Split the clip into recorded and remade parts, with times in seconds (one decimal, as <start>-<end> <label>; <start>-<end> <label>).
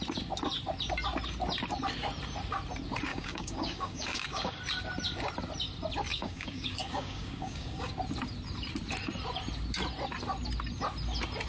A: 0.0-3.1 recorded; 3.1-4.6 remade; 4.6-6.1 recorded; 6.1-7.9 remade; 7.9-11.5 recorded